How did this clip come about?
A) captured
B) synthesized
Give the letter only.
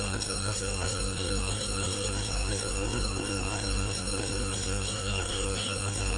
B